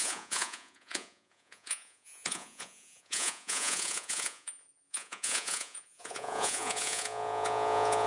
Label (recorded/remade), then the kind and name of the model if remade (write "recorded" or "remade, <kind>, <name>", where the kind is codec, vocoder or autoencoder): remade, vocoder, Vocos